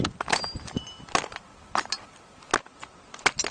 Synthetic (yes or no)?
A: no